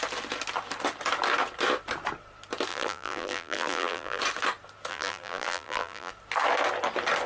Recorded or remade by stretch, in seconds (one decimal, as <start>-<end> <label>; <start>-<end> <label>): 0.0-2.7 recorded; 2.7-4.2 remade; 4.2-4.9 recorded; 4.9-6.1 remade; 6.1-7.3 recorded